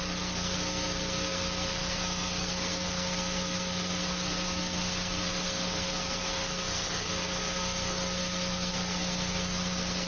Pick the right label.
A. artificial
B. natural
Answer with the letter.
A